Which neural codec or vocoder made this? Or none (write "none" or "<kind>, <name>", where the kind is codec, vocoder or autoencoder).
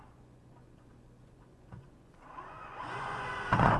vocoder, Vocos